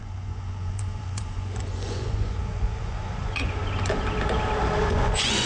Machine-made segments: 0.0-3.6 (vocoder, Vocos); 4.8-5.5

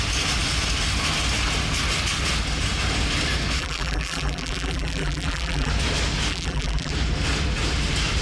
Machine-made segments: 3.6-5.7 (vocoder, BigVGAN v2); 6.3-6.9

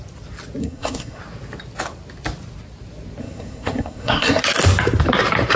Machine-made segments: 0.6-1.2 (codec, SNAC); 3.2-4.4

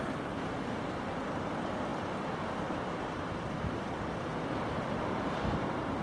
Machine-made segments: none

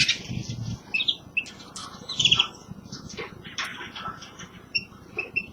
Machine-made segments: 1.8-3.3 (vocoder, BigVGAN v2); 3.7-5.5

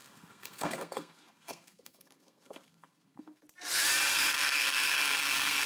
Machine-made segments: 0.0-3.4 (codec, SNAC); 4.1-5.7